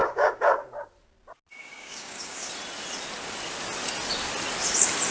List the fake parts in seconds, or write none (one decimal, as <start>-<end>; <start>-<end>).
0.0-0.6; 1.6-2.5